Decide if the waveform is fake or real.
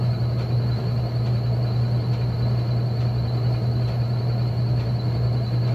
real